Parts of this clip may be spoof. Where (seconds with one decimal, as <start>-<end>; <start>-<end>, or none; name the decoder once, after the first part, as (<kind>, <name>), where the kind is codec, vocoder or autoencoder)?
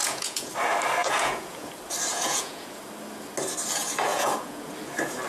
0.0-0.5 (vocoder, Vocos); 1.0-1.7; 2.1-2.8; 4.1-4.7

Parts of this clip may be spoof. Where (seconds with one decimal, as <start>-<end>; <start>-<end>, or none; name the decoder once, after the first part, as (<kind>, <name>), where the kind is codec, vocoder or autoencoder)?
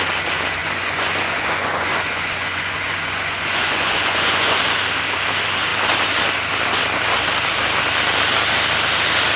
0.6-4.6 (vocoder, Vocos)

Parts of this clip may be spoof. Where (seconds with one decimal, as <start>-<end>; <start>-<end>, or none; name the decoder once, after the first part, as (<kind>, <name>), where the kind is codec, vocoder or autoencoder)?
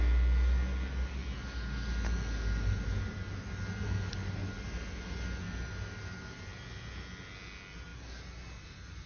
none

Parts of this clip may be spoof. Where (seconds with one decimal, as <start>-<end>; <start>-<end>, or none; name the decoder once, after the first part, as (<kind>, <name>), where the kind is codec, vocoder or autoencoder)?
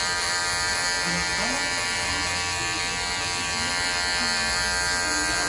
none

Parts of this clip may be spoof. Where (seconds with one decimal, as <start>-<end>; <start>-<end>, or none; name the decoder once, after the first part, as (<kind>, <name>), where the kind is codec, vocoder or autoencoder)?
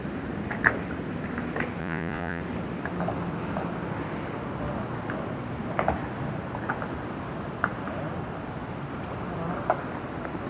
1.8-2.4 (vocoder, Vocos)